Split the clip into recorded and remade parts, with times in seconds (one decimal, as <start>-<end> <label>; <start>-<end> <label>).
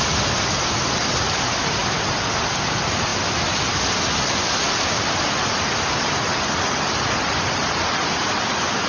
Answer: 0.0-8.9 recorded